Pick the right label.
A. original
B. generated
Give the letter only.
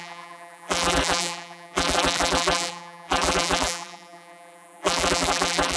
B